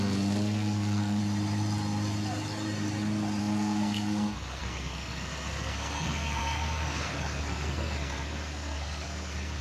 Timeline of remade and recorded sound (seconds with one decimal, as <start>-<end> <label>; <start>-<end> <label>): 0.0-1.2 remade; 1.2-3.4 recorded; 3.4-9.6 remade